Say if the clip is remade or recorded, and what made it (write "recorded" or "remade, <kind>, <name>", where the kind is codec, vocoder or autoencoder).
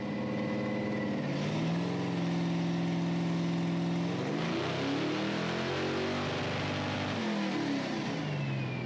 recorded